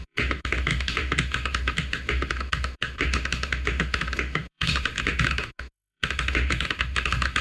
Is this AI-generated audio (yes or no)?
yes